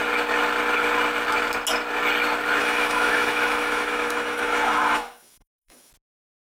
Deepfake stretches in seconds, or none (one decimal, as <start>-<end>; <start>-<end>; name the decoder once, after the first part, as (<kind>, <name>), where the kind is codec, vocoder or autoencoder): 2.6-5.9 (autoencoder, DAC-VAE)

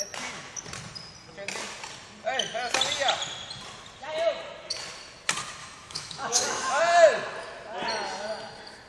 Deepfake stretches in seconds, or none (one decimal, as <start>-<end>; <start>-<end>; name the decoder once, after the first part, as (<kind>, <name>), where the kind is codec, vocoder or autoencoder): 5.6-6.8 (autoencoder, DAC-VAE)